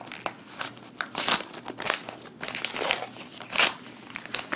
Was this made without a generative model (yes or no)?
yes